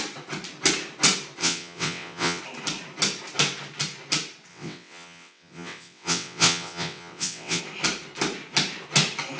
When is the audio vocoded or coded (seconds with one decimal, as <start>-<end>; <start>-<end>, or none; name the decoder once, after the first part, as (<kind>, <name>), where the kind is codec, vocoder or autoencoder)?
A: 1.4-2.4 (vocoder, WaveNeXt); 4.5-7.6